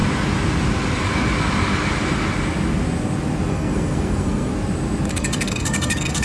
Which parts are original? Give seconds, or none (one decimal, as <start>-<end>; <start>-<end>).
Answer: 0.0-3.5; 4.5-5.1